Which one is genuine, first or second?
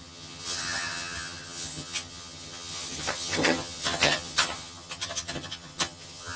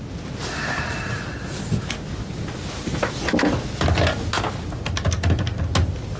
second